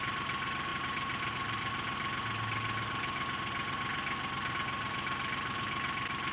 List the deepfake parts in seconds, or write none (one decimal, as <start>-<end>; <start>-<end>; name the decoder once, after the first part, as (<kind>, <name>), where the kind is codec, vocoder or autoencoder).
none